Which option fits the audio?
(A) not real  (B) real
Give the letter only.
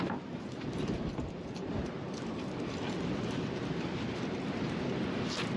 A